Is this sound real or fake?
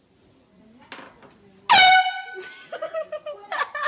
real